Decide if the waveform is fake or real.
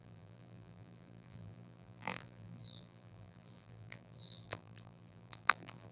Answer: fake